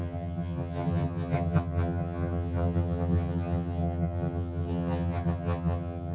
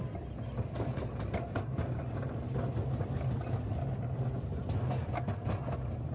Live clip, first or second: second